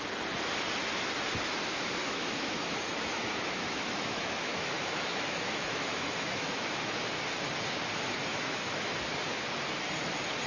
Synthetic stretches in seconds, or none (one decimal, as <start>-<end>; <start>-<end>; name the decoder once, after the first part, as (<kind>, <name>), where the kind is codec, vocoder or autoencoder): 2.0-6.9 (autoencoder, DAC-VAE); 8.3-9.0